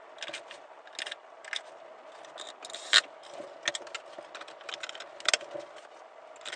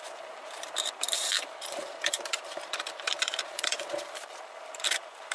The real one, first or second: first